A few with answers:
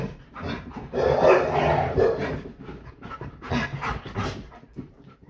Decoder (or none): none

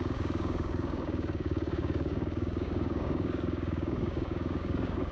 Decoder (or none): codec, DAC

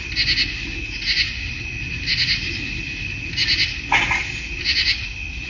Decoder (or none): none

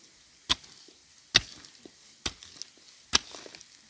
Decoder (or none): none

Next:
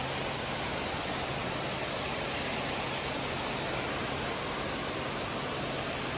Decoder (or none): none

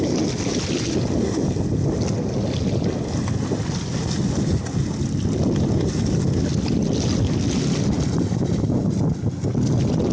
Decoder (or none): none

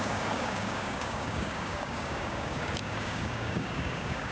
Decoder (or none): codec, DAC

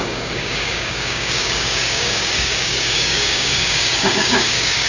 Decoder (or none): codec, DAC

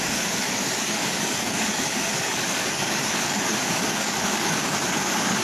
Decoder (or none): codec, DAC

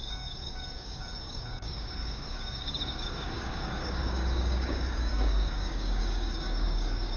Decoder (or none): codec, DAC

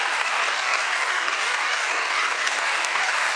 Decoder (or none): codec, DAC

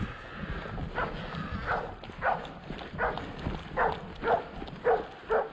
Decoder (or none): none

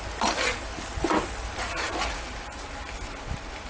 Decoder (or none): none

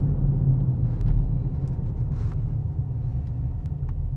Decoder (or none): none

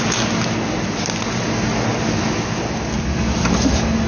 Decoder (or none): none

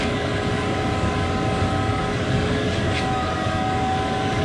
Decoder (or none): codec, DAC